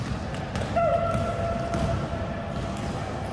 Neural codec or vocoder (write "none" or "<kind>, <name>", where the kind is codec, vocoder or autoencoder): none